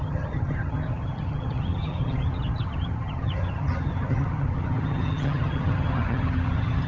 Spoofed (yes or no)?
yes